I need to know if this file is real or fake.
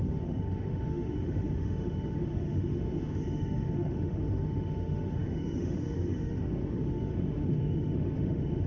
fake